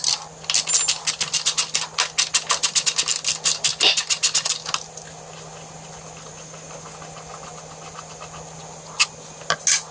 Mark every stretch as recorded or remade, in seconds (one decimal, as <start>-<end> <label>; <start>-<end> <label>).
0.0-9.9 recorded

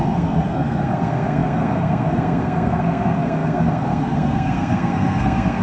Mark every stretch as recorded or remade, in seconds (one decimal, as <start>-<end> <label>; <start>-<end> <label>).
0.0-5.6 remade